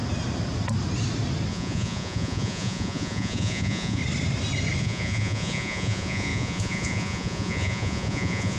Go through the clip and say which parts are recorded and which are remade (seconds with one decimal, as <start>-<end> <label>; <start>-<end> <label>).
0.0-1.5 recorded; 1.5-4.0 remade; 4.0-4.8 recorded; 4.8-8.6 remade